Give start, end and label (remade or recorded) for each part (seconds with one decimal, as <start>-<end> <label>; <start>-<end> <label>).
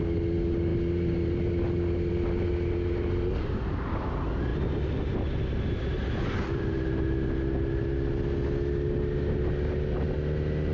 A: 0.0-10.7 recorded